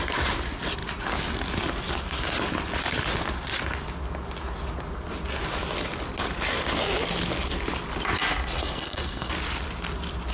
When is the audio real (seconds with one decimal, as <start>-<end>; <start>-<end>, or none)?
0.0-8.6; 9.3-10.3